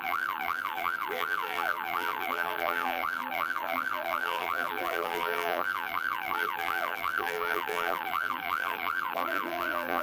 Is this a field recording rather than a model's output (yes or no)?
no